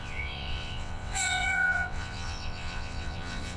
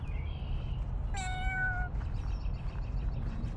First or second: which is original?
second